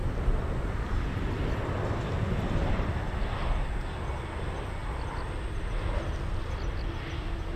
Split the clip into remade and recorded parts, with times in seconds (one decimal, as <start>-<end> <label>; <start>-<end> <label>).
0.0-0.7 remade; 0.7-4.8 recorded; 4.8-5.7 remade; 5.7-7.6 recorded